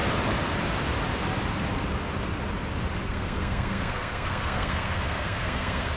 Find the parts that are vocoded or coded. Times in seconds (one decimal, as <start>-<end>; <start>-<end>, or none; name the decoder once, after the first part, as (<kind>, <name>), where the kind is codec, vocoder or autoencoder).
3.0-6.0 (codec, SNAC)